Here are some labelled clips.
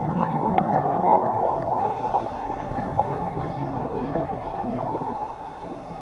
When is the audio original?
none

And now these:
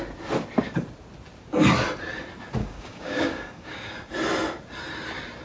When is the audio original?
0.0-2.6; 4.1-5.4